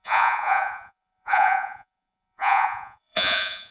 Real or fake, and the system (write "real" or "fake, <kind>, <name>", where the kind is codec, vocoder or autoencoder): fake, vocoder, Vocos